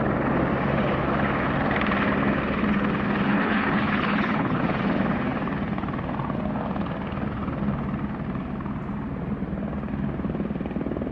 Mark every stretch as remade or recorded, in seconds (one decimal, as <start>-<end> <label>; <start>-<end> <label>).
0.0-3.3 recorded; 3.3-4.6 remade; 4.6-11.1 recorded